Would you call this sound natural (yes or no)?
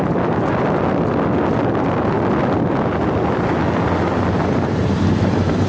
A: yes